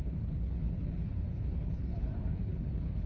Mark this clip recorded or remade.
remade